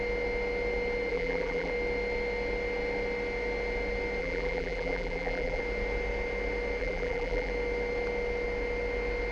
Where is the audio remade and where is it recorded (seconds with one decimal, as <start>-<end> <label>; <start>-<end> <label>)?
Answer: 0.0-1.1 recorded; 1.1-1.7 remade; 1.7-4.2 recorded; 4.2-5.6 remade; 5.6-6.8 recorded; 6.8-7.5 remade; 7.5-9.3 recorded